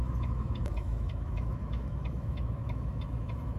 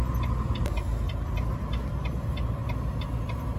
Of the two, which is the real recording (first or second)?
second